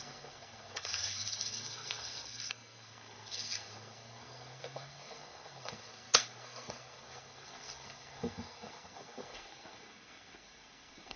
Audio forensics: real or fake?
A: fake